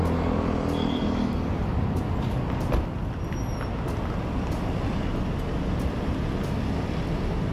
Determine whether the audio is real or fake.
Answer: real